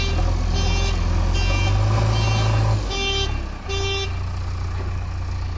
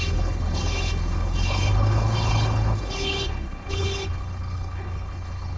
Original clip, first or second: first